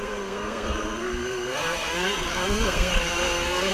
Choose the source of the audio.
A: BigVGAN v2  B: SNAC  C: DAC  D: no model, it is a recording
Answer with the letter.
B